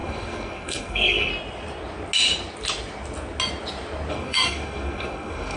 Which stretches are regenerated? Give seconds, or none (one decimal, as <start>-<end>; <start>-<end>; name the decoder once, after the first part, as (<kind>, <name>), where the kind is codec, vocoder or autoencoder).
0.0-1.3 (codec, SNAC); 4.1-5.6